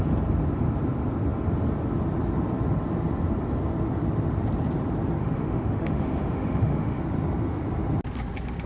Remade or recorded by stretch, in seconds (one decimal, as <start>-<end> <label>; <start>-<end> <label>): 0.0-5.2 recorded; 5.2-7.0 remade; 7.0-8.7 recorded